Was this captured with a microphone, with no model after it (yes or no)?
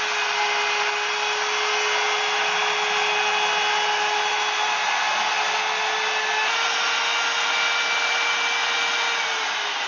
yes